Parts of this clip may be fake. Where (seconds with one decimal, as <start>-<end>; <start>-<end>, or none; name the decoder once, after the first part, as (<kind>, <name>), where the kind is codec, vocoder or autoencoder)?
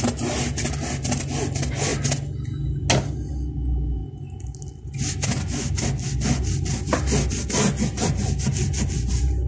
none